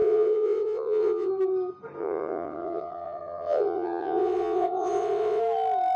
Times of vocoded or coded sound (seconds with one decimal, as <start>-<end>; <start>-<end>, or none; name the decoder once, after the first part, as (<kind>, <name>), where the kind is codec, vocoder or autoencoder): 0.0-1.3 (vocoder, WaveNeXt); 2.0-5.4